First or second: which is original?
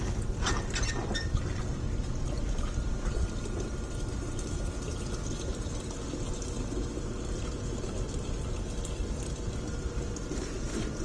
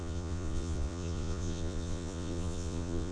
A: first